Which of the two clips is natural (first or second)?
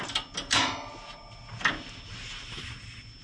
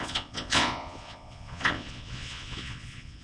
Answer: first